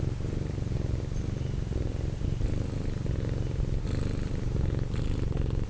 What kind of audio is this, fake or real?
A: real